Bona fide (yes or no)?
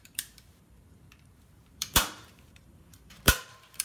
no